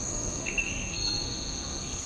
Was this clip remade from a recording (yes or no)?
yes